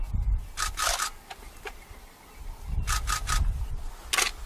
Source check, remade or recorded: recorded